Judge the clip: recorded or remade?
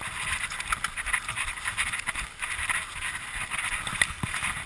recorded